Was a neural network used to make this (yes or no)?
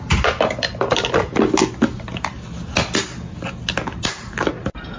no